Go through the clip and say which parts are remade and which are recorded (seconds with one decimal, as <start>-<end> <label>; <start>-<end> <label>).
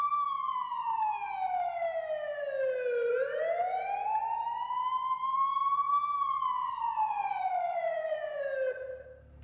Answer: 0.0-6.6 recorded; 6.6-8.4 remade; 8.4-9.4 recorded